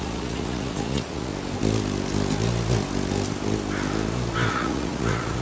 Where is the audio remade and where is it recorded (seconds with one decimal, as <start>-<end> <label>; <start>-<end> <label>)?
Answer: 0.0-1.3 remade; 1.3-4.5 recorded; 4.5-5.4 remade